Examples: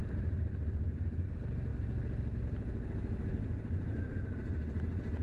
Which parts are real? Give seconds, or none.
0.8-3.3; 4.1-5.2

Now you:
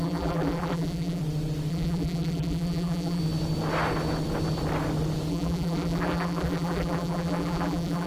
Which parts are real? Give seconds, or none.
1.2-1.7; 3.2-5.3

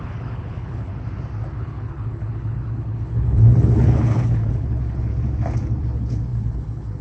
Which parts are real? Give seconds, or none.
0.9-1.6; 5.1-5.8

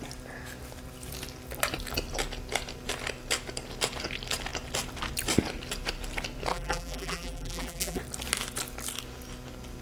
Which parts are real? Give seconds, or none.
0.0-6.5; 8.0-9.8

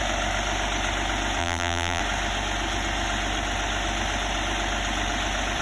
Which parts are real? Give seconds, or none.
0.0-1.4; 2.0-5.6